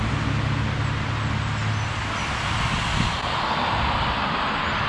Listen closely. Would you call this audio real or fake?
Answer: real